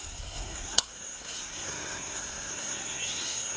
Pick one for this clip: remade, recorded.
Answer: remade